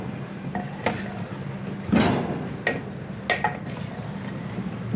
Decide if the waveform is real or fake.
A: real